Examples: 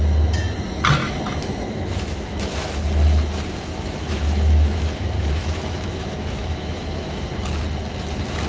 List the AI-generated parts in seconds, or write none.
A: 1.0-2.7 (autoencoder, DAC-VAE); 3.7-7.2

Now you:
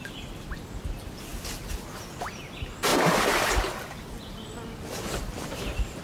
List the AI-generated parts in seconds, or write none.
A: none

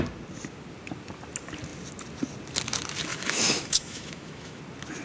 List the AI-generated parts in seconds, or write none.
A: 3.1-4.6 (autoencoder, DAC-VAE)

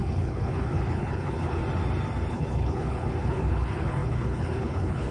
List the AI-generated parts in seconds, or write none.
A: 0.0-1.6 (codec, HILCodec); 2.3-5.1

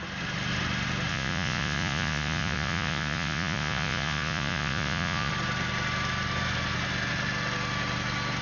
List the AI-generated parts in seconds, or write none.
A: 1.1-5.3 (vocoder, Vocos)

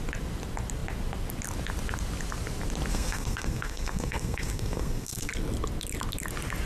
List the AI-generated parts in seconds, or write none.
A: 2.9-5.3 (codec, SNAC)

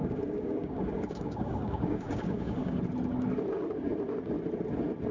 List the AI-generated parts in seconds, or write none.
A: 0.0-2.8 (codec, DAC)

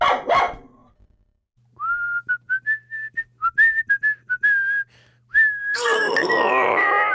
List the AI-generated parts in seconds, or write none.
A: 5.6-6.3 (codec, SNAC)